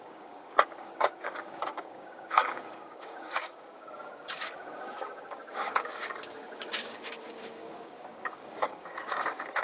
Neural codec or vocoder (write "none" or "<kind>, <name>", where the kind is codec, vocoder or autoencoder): codec, DAC